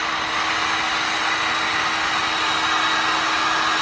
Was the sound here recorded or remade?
recorded